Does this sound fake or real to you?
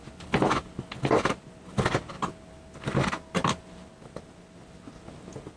real